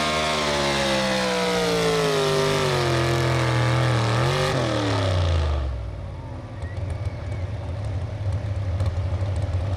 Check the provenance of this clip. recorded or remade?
recorded